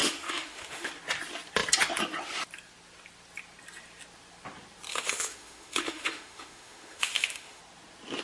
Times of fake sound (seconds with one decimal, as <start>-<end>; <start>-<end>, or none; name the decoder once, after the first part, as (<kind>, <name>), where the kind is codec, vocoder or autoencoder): 0.0-0.9 (autoencoder, DAC-VAE); 4.9-7.6